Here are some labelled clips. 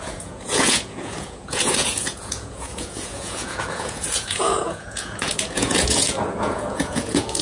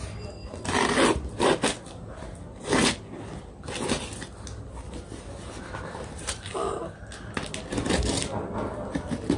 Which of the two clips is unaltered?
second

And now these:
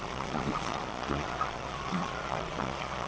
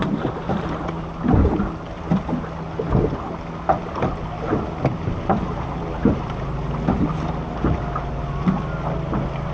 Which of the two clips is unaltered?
second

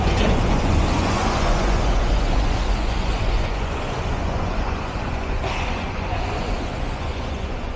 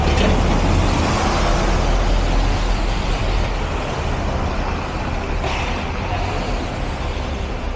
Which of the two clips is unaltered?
second